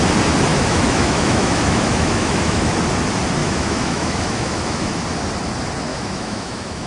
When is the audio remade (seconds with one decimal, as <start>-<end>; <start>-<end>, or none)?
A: 0.5-2.7; 3.4-5.0; 5.9-6.9